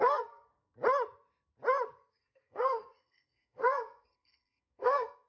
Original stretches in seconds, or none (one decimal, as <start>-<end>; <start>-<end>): 0.5-2.1